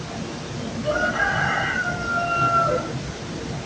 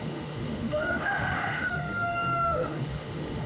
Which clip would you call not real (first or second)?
second